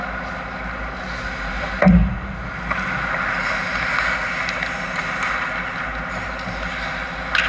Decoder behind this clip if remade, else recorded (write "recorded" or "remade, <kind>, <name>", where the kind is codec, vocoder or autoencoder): recorded